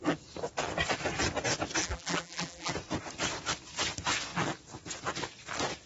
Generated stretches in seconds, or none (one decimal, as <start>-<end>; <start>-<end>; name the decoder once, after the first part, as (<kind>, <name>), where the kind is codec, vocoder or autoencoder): 1.8-2.7 (vocoder, BigVGAN v2)